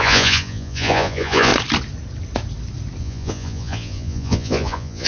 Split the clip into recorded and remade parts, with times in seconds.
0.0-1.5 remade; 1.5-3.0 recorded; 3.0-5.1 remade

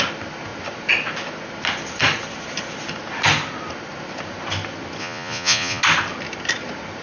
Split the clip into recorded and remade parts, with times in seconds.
0.0-5.0 recorded; 5.0-5.8 remade; 5.8-7.0 recorded

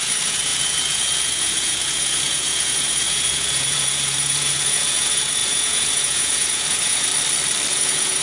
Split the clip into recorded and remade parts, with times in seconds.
0.0-7.1 remade; 7.1-7.7 recorded; 7.7-8.2 remade

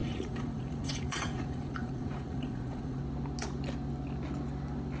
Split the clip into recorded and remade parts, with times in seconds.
0.0-3.0 remade; 3.0-5.0 recorded

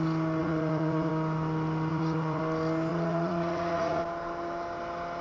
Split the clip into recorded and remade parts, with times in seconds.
0.0-0.4 recorded; 0.4-1.1 remade; 1.1-1.9 recorded; 1.9-2.4 remade; 2.4-2.9 recorded; 2.9-4.0 remade; 4.0-5.2 recorded